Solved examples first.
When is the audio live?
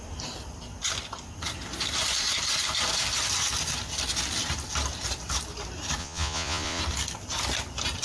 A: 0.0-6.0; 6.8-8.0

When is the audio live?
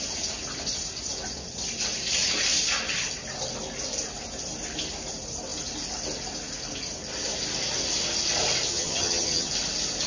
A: 0.0-8.7; 9.5-10.1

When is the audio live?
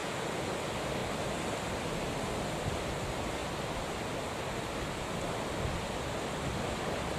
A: 0.5-7.2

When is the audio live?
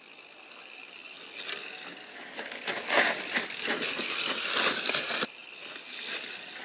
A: 0.0-6.6